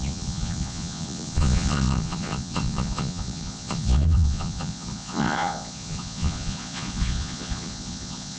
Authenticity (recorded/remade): remade